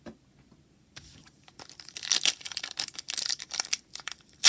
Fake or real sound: fake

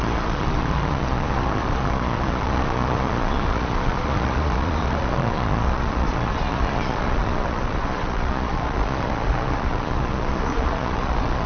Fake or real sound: fake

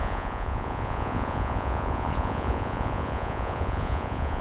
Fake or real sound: fake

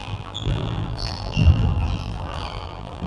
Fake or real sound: fake